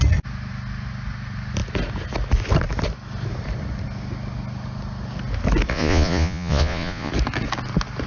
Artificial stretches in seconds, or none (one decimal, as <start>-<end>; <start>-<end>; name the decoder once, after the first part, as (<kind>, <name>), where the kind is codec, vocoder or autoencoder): 5.7-7.1 (vocoder, Vocos)